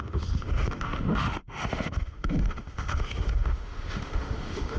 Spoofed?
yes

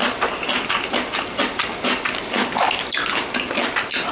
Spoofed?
no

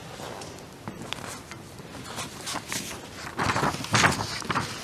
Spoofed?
no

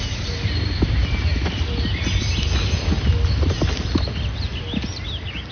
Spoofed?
no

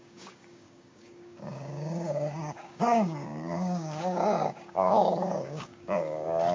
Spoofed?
yes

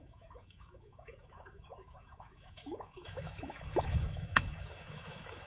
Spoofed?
yes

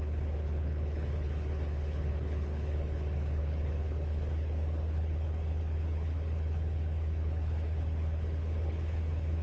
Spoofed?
yes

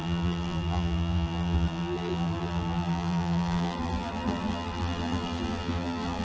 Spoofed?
yes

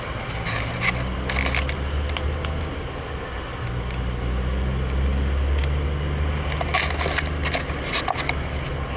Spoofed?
no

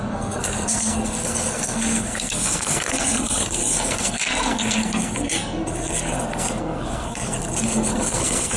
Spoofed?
yes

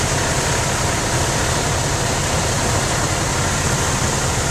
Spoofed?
no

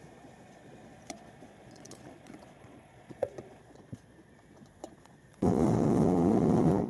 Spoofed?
yes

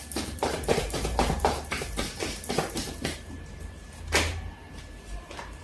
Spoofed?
yes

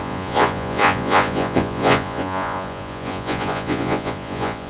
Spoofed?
yes